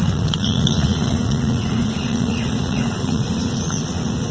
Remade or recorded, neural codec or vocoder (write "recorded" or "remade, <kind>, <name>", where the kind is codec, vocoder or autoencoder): remade, vocoder, Vocos